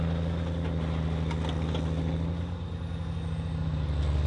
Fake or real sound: real